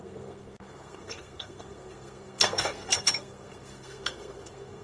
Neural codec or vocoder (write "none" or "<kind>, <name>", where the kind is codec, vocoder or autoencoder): codec, SNAC